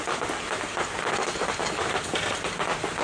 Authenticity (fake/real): real